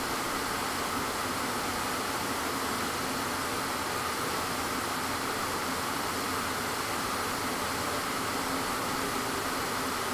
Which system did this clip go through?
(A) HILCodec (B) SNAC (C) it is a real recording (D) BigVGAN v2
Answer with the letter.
C